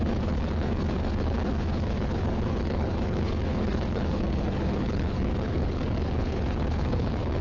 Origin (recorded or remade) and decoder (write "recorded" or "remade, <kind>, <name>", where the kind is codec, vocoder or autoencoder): remade, codec, HILCodec